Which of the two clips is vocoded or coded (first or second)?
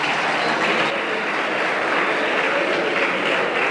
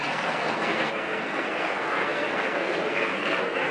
second